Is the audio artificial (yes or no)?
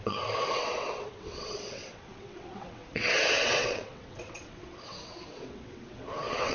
yes